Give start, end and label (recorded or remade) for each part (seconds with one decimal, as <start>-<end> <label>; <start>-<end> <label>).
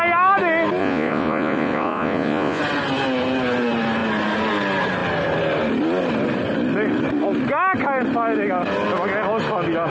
0.0-0.8 recorded; 0.8-2.6 remade; 2.6-9.9 recorded